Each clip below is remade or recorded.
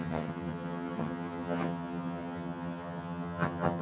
remade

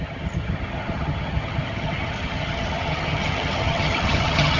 remade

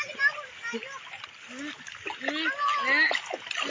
recorded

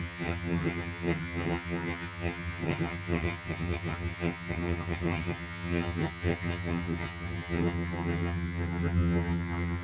remade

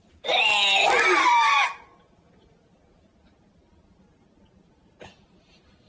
recorded